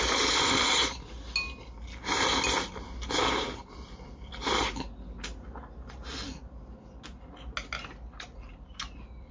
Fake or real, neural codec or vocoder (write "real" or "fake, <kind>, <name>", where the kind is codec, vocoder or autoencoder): real